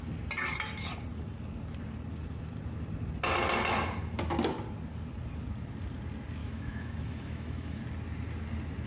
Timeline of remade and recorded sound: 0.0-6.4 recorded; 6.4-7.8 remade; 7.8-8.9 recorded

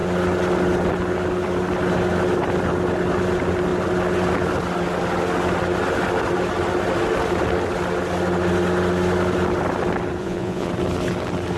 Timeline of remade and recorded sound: 0.0-10.2 recorded; 10.2-10.7 remade; 10.7-11.6 recorded

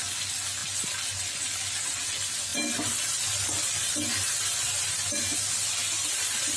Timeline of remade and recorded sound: 0.0-6.6 recorded

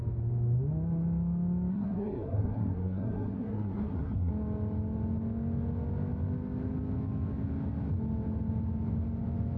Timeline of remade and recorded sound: 0.0-1.7 recorded; 1.7-4.3 remade; 4.3-9.6 recorded

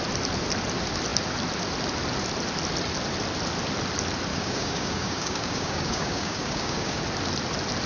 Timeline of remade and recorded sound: 0.0-4.3 recorded; 4.3-7.0 remade; 7.0-7.9 recorded